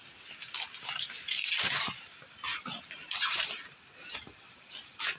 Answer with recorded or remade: recorded